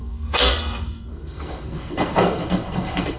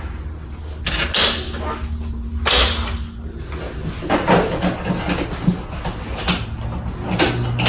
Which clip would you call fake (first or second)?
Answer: first